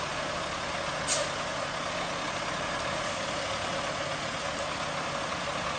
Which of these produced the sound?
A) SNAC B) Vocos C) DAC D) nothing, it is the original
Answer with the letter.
D